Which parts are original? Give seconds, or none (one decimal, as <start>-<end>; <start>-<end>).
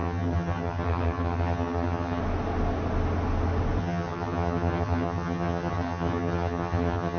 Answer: 2.2-3.8